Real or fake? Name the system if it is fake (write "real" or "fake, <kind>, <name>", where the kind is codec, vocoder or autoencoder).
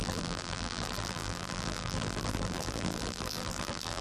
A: fake, vocoder, BigVGAN v2